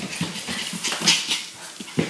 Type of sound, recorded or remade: recorded